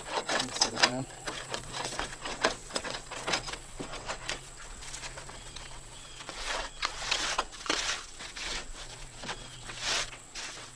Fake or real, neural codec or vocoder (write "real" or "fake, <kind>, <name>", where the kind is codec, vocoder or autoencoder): fake, vocoder, WaveNeXt